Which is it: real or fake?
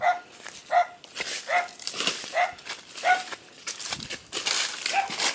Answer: real